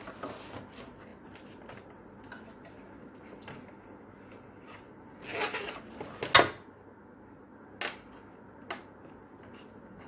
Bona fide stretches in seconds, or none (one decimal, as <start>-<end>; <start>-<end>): 0.0-10.1

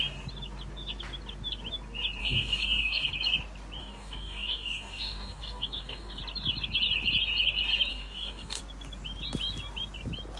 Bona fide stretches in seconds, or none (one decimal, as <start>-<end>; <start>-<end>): 0.0-2.2; 3.1-3.8; 6.2-7.9; 8.6-10.4

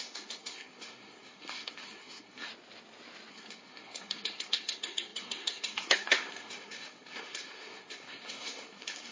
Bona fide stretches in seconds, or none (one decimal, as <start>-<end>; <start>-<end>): 2.5-3.3

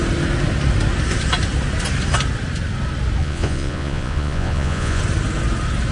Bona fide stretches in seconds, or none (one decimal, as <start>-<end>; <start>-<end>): 0.0-3.2; 5.0-5.9